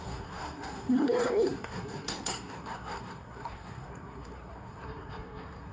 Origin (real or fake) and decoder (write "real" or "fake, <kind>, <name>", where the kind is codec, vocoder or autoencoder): fake, codec, SNAC